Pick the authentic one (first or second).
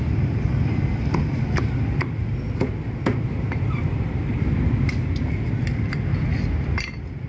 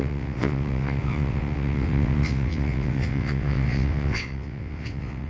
first